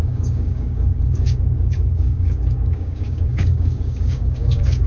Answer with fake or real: fake